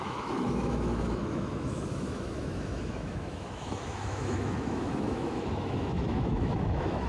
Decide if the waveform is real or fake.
fake